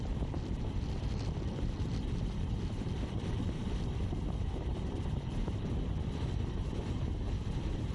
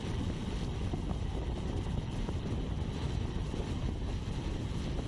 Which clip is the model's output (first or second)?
first